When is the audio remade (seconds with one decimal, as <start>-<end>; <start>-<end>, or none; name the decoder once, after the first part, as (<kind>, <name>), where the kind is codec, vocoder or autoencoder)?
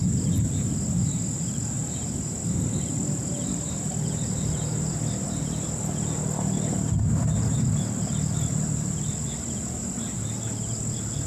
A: none